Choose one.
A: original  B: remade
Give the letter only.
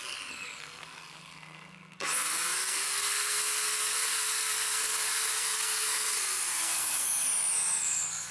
B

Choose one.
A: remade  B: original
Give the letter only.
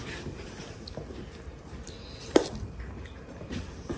B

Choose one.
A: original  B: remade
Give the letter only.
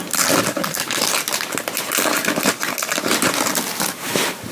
A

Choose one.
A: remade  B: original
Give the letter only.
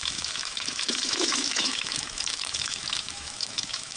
A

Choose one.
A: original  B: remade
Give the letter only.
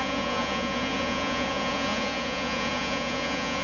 B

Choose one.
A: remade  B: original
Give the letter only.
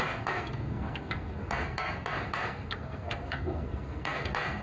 A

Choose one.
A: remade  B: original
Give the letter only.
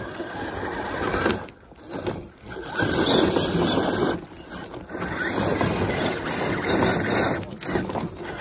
B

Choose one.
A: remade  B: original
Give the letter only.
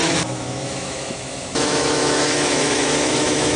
A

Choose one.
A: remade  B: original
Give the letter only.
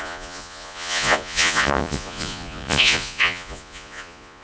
A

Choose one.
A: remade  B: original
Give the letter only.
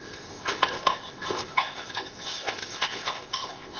A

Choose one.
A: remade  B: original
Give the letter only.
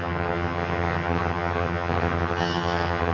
A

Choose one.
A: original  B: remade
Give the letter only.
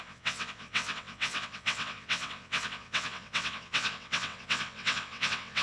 B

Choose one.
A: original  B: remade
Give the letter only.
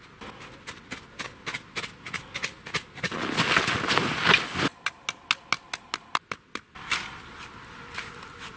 A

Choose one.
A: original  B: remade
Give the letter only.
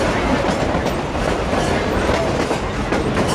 A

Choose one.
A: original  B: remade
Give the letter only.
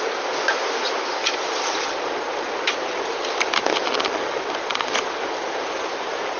A